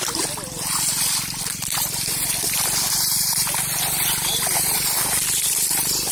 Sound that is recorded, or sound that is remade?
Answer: remade